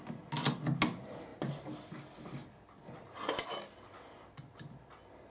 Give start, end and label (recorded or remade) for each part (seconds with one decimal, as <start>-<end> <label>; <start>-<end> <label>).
0.0-5.3 recorded